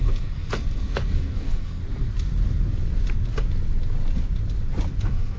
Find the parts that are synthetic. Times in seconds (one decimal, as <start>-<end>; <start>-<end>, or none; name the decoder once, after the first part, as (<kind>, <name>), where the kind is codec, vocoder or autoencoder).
0.0-1.8 (codec, SNAC); 5.0-5.4